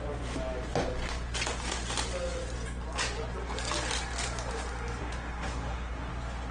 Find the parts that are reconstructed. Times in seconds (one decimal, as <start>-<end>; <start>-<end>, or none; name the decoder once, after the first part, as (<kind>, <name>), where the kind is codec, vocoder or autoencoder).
5.0-6.1 (codec, SNAC)